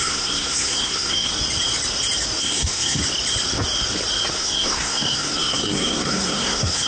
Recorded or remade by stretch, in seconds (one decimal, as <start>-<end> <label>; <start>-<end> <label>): 0.0-1.3 remade; 1.3-2.4 recorded; 2.4-3.0 remade; 3.0-4.3 recorded; 4.3-6.9 remade